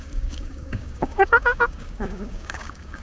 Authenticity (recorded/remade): remade